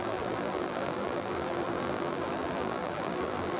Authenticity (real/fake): fake